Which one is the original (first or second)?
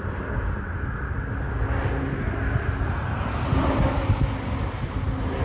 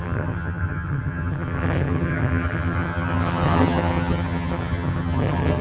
first